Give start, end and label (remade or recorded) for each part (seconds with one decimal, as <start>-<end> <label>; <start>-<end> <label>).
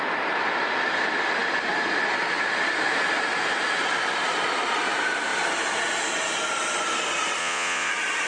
0.0-7.4 recorded; 7.4-7.9 remade; 7.9-8.3 recorded